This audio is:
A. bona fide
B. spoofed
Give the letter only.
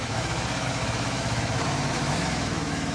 B